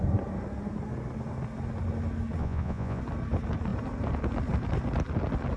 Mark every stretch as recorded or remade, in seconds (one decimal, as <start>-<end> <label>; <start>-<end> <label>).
0.0-2.4 recorded; 2.4-3.0 remade; 3.0-5.6 recorded